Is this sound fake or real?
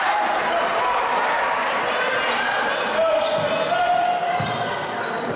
real